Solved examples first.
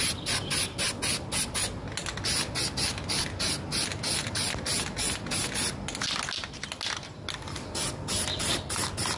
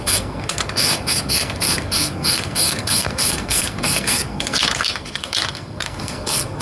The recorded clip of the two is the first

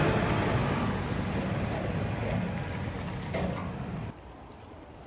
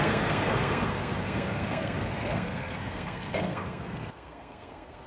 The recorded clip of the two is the first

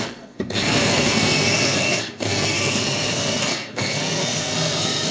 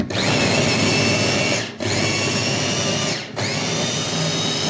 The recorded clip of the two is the second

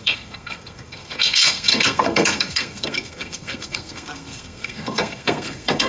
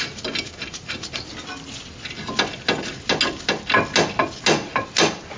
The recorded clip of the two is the second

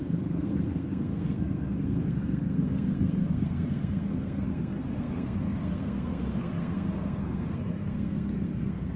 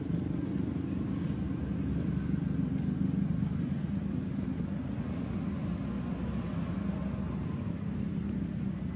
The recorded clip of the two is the second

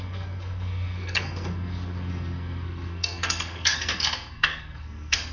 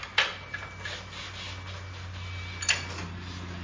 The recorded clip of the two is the second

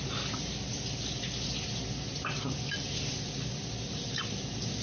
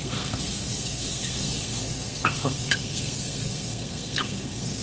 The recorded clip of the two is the first